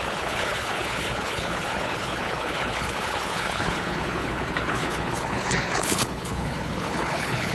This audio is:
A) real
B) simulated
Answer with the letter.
B